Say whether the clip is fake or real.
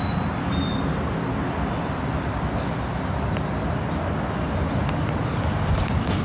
real